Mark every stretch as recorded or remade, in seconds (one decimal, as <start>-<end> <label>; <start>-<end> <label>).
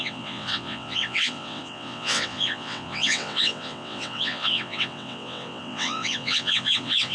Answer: 0.0-7.1 remade